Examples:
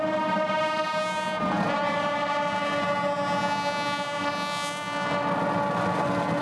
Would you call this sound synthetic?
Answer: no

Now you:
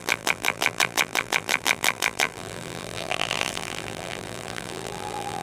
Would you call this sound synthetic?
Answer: yes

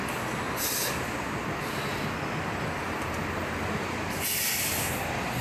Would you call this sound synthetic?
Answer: no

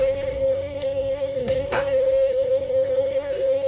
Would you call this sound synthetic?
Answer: yes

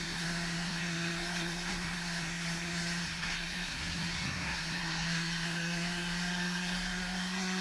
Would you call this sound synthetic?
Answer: yes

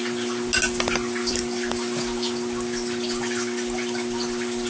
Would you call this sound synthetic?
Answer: no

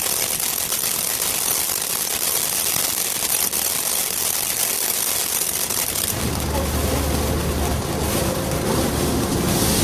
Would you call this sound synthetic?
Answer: no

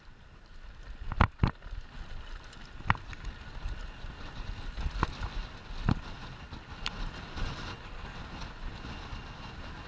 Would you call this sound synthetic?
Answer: no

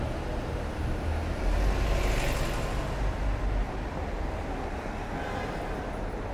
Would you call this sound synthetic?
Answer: no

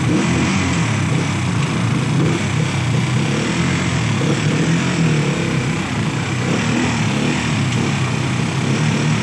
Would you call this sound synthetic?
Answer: no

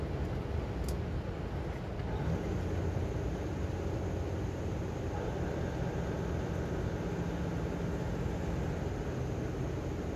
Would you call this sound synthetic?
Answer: no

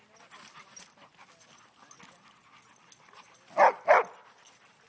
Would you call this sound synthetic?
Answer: no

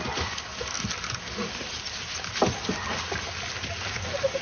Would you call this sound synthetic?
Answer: no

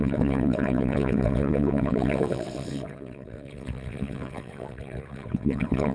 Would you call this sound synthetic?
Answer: yes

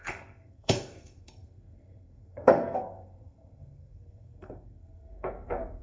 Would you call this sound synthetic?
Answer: yes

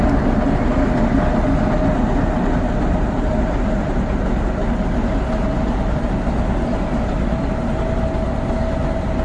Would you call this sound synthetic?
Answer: no